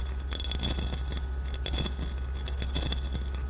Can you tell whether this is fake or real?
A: real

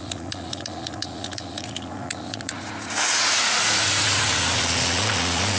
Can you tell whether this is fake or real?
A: fake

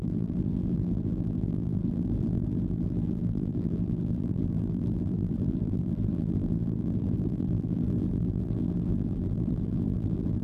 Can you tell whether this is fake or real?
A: fake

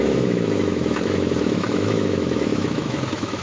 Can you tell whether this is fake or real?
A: fake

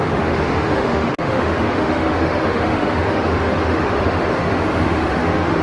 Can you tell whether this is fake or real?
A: fake